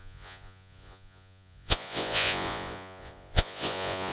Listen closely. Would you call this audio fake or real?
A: fake